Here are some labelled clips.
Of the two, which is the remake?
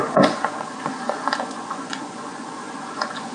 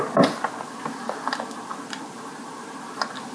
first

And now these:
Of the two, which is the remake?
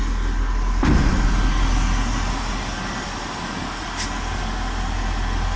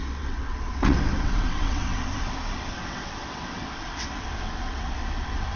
second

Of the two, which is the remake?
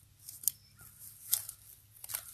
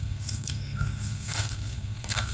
second